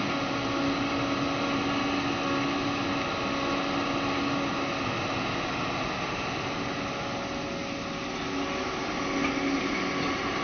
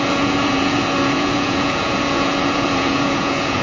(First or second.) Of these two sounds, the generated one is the second